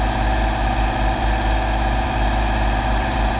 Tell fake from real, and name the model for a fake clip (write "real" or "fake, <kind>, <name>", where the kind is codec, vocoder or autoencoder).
fake, vocoder, BigVGAN v2